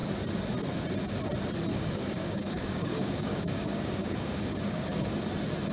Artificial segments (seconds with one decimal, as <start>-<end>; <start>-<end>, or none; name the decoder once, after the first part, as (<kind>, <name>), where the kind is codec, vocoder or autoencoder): 1.7-5.1 (codec, DAC)